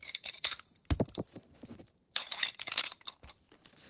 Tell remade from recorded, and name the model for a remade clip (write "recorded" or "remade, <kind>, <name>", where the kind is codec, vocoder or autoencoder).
remade, vocoder, BigVGAN v2